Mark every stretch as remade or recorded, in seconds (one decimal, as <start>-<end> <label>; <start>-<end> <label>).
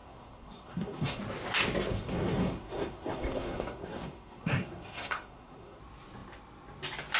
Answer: 0.0-1.2 remade; 1.2-1.9 recorded; 1.9-5.8 remade; 5.8-7.2 recorded